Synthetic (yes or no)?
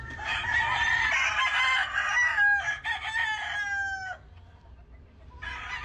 no